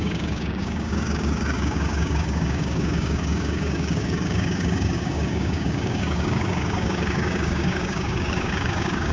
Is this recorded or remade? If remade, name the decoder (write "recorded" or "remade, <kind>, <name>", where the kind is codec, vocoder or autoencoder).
remade, codec, DAC